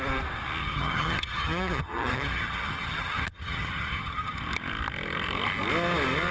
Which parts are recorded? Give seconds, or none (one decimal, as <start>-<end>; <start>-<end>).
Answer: 0.0-0.6; 4.4-6.3